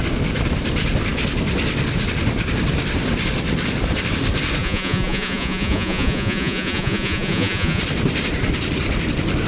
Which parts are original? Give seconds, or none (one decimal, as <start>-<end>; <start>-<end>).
0.0-4.6; 7.8-9.5